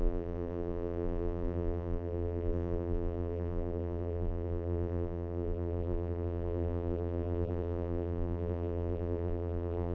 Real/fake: fake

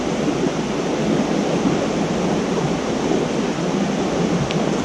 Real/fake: real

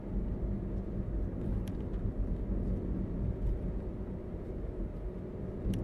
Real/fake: real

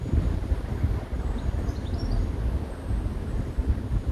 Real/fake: real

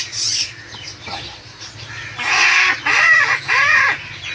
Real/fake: real